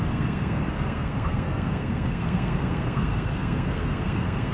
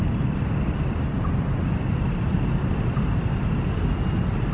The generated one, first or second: first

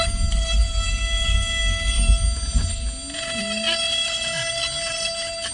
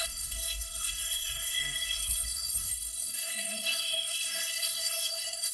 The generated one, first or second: second